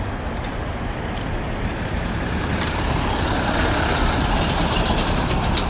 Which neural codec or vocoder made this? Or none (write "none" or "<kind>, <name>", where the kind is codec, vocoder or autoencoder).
vocoder, BigVGAN v2